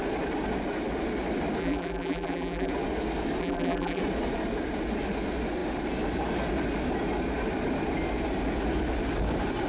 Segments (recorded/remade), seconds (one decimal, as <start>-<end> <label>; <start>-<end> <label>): 0.0-1.6 recorded; 1.6-2.7 remade; 2.7-3.4 recorded; 3.4-4.0 remade; 4.0-9.7 recorded